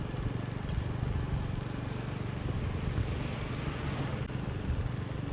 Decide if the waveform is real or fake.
real